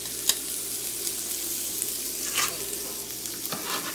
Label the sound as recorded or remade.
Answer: recorded